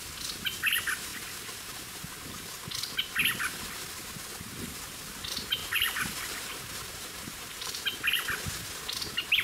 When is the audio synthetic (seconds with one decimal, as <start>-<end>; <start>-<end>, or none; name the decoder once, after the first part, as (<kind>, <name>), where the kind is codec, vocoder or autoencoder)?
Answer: 1.1-2.1 (vocoder, BigVGAN v2); 5.6-7.8